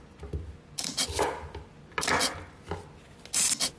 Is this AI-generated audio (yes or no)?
no